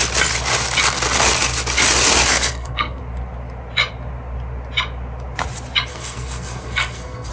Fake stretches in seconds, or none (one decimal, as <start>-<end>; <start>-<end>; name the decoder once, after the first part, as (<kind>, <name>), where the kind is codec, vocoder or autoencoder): 2.3-3.0 (codec, SNAC); 5.9-7.3